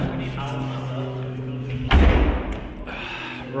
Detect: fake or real real